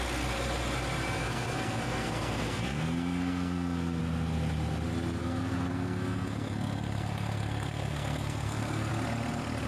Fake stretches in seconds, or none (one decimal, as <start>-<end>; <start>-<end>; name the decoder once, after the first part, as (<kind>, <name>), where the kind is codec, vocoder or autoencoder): 1.2-4.0 (codec, SNAC); 5.2-8.9